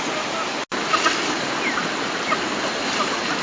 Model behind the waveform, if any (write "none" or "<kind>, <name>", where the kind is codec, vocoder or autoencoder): none